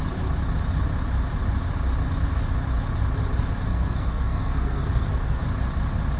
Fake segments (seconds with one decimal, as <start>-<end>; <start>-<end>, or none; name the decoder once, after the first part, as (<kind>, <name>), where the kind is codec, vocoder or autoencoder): 3.7-5.4 (codec, SNAC)